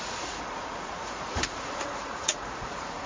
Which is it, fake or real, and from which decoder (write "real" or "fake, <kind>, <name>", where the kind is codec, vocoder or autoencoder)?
fake, vocoder, Vocos